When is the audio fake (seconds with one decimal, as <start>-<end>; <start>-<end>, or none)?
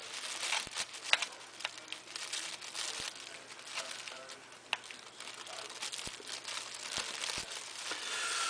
none